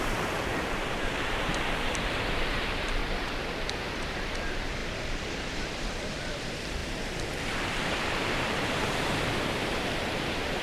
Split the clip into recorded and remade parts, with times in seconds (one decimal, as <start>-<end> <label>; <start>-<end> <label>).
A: 0.0-3.0 remade; 3.0-3.7 recorded; 3.7-10.6 remade